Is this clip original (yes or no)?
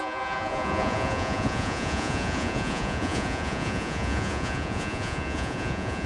no